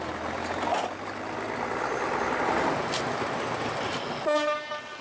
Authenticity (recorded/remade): recorded